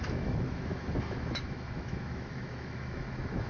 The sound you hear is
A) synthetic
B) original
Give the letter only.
A